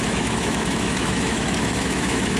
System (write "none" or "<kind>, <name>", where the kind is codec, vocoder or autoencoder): autoencoder, DAC-VAE